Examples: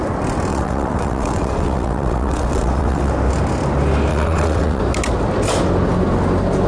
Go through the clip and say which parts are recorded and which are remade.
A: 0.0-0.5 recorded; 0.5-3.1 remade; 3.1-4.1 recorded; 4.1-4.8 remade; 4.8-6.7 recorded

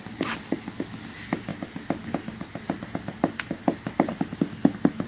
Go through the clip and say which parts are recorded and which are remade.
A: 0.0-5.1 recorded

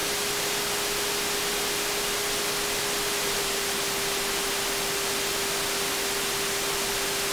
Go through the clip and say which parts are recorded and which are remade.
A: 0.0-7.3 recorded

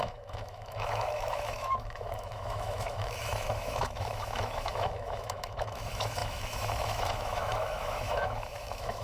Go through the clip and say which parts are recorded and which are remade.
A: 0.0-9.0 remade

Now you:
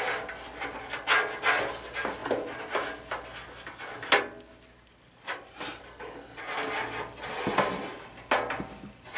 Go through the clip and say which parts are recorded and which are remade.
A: 0.0-9.2 recorded

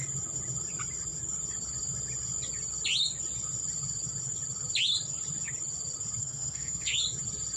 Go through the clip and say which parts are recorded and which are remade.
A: 0.0-6.2 recorded; 6.2-7.0 remade; 7.0-7.6 recorded

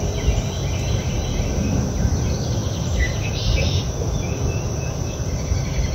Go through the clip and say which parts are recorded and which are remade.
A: 0.0-5.9 recorded